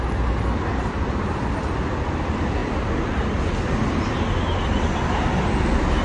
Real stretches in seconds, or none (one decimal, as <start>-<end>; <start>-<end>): 0.0-6.0